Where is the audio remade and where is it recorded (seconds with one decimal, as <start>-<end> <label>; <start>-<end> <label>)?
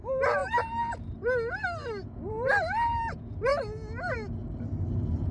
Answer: 0.0-5.3 recorded